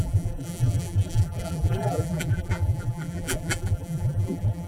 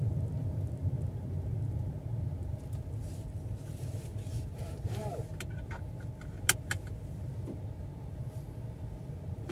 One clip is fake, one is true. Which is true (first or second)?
second